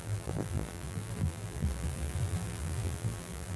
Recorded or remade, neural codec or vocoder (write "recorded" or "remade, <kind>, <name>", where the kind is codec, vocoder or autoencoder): remade, vocoder, BigVGAN v2